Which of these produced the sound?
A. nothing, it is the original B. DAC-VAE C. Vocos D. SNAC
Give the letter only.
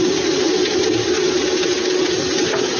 A